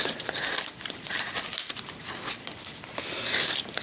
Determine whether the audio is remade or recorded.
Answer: recorded